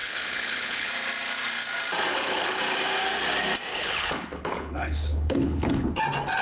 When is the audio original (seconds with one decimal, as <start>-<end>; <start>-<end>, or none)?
0.9-2.1; 2.6-3.7; 5.9-6.4